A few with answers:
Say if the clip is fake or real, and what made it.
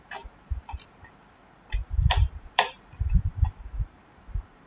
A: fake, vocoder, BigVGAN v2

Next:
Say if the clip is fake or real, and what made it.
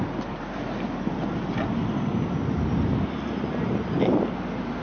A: real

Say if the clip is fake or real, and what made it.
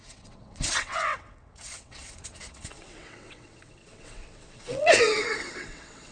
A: fake, vocoder, WaveNeXt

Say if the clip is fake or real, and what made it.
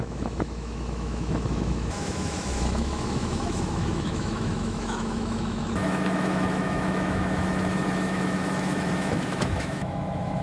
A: fake, autoencoder, DAC-VAE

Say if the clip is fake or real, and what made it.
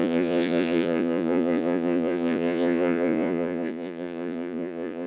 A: fake, vocoder, Vocos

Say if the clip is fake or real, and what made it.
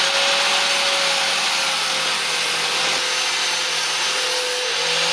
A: real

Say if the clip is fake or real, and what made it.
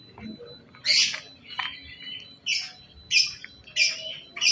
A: real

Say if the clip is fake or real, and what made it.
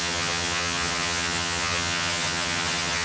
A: fake, vocoder, HiFi-GAN